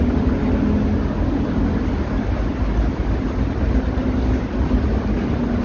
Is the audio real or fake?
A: real